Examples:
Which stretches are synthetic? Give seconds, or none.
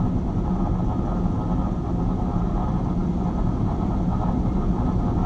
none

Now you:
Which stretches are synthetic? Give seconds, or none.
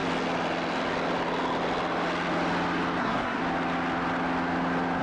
3.0-3.4 (codec, SNAC)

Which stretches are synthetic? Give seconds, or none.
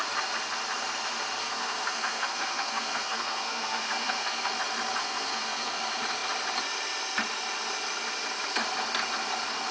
1.4-4.5 (codec, SNAC); 5.0-5.8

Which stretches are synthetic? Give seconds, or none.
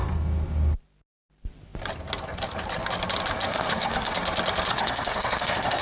3.5-4.1 (codec, SNAC); 4.7-5.8